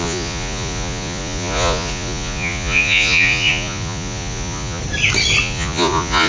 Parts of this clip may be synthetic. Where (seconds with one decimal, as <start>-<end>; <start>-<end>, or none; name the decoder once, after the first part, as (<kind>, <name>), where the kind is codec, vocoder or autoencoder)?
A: 0.0-4.8 (vocoder, Vocos); 5.4-6.3